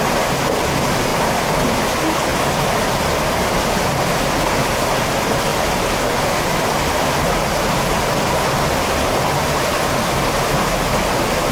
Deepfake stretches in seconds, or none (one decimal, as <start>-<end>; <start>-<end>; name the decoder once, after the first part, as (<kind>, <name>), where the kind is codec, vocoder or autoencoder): none